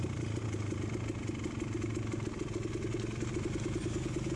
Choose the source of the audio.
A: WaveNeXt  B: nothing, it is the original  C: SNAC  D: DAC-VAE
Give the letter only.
B